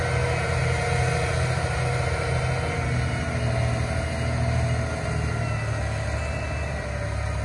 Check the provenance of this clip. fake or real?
real